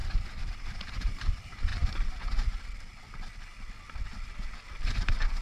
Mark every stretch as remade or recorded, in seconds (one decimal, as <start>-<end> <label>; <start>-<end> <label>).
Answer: 0.0-0.8 recorded; 0.8-1.7 remade; 1.7-4.9 recorded; 4.9-5.4 remade